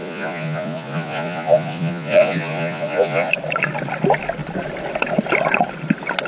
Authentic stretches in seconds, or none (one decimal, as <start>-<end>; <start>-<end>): 3.3-6.3